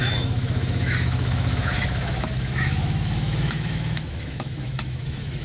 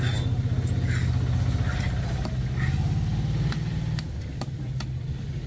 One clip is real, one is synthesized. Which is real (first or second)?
second